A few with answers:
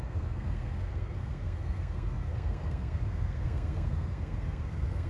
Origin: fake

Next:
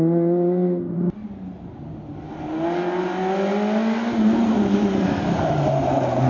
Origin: real